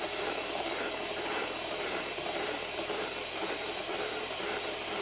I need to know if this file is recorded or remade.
remade